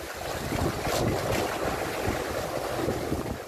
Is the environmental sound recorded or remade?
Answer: recorded